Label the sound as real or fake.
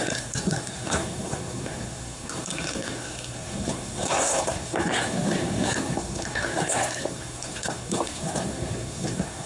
fake